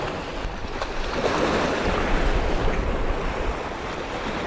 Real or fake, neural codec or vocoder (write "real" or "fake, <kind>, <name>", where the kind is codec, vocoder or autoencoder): real